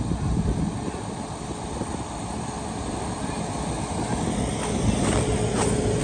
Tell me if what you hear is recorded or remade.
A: recorded